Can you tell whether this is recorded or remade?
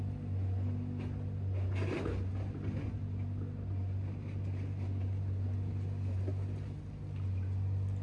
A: recorded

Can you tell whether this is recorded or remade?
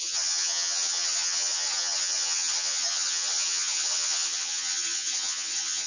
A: remade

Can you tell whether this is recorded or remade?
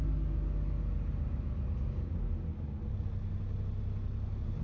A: recorded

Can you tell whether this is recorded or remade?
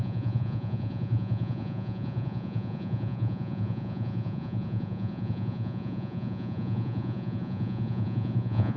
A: remade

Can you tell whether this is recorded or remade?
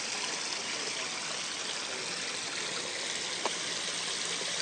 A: recorded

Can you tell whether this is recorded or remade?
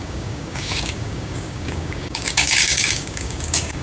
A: remade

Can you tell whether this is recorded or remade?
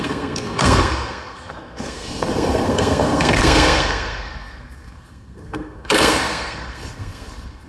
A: remade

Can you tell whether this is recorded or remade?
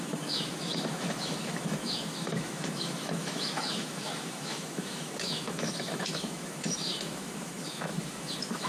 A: remade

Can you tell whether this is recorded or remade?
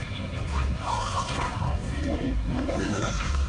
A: remade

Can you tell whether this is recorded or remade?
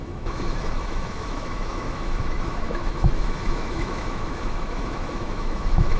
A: remade